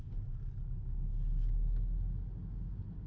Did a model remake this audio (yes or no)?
no